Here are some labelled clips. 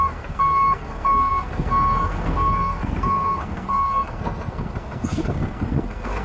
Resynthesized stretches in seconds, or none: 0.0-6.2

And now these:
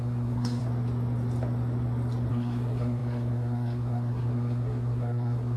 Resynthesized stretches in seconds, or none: 0.0-0.6; 2.3-5.6

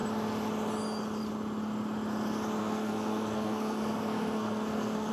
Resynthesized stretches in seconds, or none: 2.6-5.1

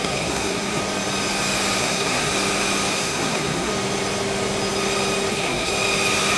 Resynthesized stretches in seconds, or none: 0.0-0.8; 1.8-2.3; 2.9-3.7; 5.3-5.7